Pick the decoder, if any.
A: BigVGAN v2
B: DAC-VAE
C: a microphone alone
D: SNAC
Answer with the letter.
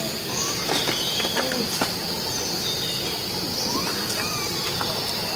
C